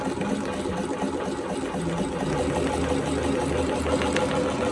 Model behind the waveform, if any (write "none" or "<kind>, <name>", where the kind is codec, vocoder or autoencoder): none